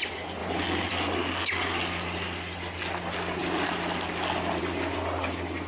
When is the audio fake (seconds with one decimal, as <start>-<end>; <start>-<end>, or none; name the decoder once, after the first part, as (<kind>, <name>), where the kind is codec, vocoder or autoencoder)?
none